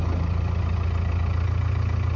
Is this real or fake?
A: real